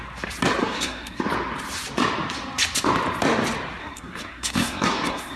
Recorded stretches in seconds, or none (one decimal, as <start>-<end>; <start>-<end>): 0.0-0.6; 1.2-3.8